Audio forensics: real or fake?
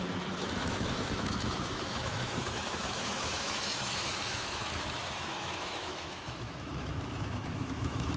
fake